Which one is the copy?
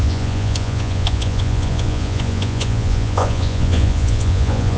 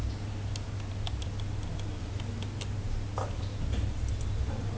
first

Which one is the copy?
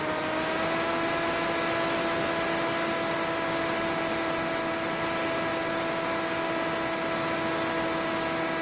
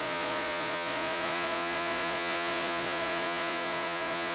second